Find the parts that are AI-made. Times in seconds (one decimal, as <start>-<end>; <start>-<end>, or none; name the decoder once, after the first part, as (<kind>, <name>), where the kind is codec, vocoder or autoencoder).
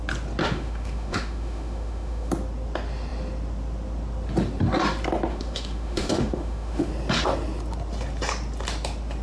0.4-2.3 (autoencoder, DAC-VAE); 5.3-6.9